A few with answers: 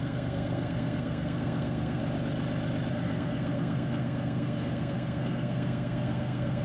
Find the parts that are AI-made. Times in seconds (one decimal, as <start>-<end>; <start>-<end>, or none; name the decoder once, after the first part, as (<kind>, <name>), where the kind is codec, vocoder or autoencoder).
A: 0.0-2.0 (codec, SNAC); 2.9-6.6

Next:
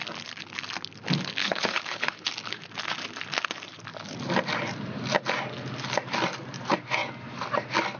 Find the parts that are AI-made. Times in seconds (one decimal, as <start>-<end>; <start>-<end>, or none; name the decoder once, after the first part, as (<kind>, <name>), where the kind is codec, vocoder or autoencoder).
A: 1.4-2.3 (codec, HILCodec)

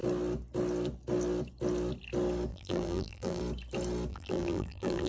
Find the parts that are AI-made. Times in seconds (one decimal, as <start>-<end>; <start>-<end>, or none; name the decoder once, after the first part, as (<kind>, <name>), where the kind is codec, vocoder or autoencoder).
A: 2.5-3.4 (vocoder, BigVGAN v2); 4.1-5.1

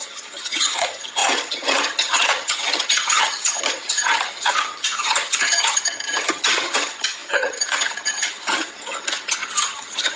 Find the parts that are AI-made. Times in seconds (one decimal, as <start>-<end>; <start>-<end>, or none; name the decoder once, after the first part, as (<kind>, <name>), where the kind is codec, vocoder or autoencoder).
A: 0.0-10.2 (vocoder, HiFi-GAN)

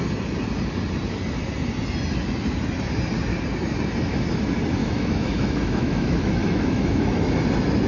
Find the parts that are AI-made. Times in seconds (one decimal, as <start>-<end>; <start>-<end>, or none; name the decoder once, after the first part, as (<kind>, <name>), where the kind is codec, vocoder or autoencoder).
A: 4.8-7.3 (autoencoder, DAC-VAE)

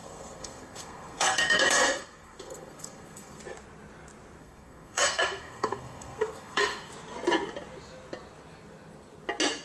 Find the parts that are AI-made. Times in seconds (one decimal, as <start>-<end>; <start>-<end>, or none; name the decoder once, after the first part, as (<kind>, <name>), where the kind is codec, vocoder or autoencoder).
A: 0.0-3.4 (codec, SNAC); 4.4-6.9

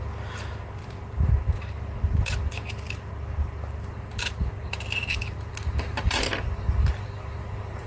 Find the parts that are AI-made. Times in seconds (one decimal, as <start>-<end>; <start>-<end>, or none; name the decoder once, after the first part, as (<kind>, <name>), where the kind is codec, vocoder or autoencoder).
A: none

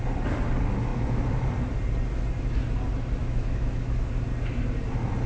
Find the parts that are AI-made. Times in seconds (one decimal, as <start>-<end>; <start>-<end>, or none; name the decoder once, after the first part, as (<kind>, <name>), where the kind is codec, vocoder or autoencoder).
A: 3.2-4.1 (autoencoder, DAC-VAE)